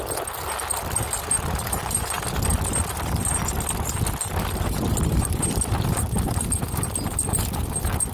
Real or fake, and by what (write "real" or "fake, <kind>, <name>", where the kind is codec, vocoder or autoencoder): real